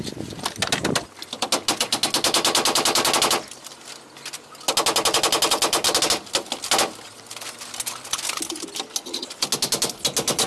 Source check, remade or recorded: recorded